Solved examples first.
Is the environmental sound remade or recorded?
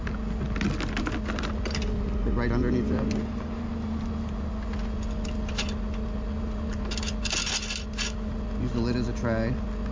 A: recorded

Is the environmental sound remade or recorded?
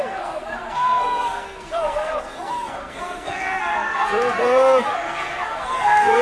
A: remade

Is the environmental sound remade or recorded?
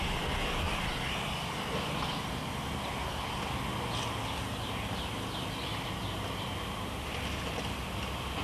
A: recorded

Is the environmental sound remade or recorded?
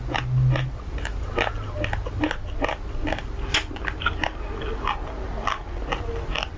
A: recorded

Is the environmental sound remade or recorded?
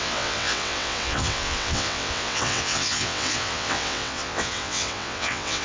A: remade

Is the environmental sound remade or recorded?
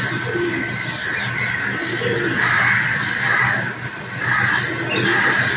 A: recorded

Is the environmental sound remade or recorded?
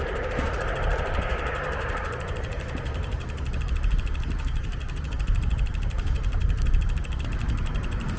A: remade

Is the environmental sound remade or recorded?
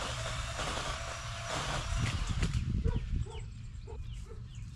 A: remade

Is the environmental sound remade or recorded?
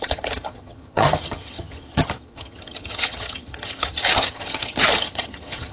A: remade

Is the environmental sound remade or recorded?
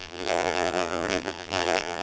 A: remade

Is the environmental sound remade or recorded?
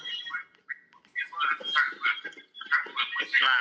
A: recorded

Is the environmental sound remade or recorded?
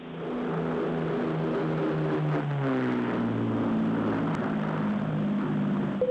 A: recorded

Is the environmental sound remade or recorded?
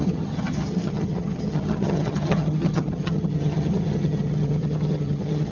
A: remade